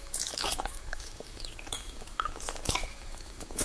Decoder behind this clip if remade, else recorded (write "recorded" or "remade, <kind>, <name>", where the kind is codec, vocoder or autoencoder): remade, autoencoder, DAC-VAE